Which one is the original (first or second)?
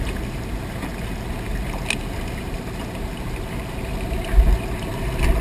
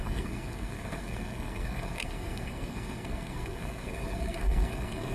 first